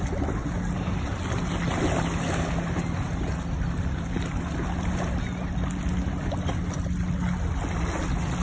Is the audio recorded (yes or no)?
yes